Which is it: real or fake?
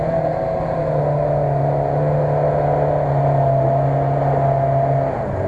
real